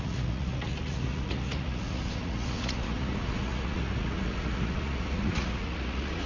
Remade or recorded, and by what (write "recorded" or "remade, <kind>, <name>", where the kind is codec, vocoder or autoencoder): remade, vocoder, Vocos